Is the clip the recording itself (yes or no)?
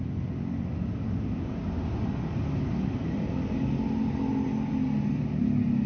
yes